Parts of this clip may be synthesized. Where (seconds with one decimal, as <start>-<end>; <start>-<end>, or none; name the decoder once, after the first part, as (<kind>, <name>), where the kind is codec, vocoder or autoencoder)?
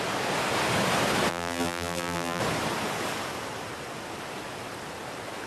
1.3-2.4 (vocoder, BigVGAN v2)